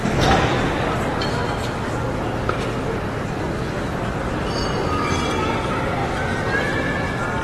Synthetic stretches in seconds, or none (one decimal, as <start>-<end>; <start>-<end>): none